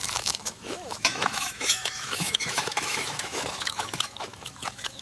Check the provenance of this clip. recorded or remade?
remade